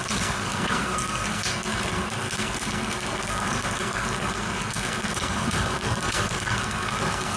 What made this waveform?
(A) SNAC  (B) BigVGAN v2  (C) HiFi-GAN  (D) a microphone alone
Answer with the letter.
A